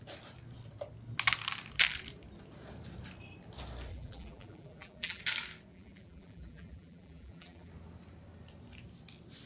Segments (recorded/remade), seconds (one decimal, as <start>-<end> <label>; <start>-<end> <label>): 0.0-3.9 recorded; 3.9-5.2 remade; 5.2-5.7 recorded; 5.7-7.7 remade; 7.7-9.5 recorded